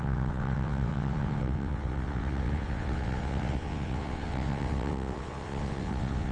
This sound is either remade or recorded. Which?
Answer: remade